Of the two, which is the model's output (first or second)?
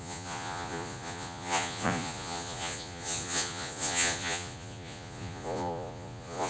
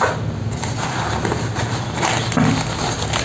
first